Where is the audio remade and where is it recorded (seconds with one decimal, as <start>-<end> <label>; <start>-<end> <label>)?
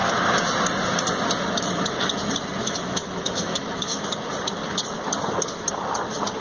0.0-2.6 recorded; 2.6-4.0 remade; 4.0-6.4 recorded